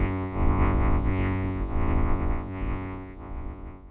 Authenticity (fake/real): fake